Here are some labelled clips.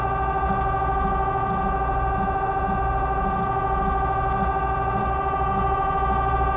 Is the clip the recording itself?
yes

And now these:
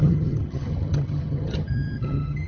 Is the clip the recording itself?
no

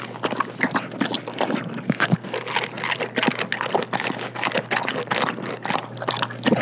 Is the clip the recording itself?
yes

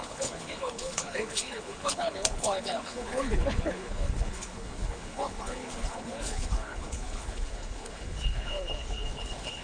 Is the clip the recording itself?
no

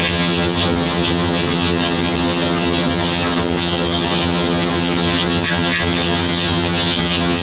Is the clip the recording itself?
no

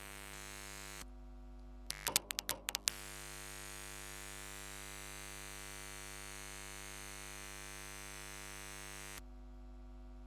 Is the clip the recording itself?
yes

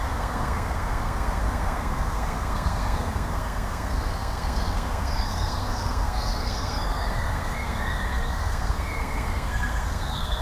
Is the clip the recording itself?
no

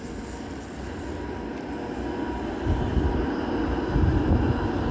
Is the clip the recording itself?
yes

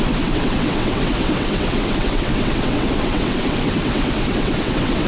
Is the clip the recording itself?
no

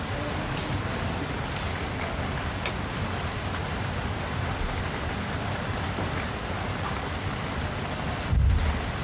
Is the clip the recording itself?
yes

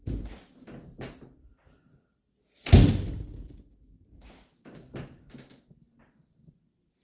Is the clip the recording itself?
yes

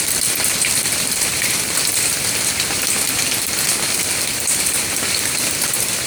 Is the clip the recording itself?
yes